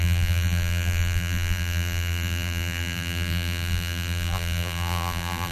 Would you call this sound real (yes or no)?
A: no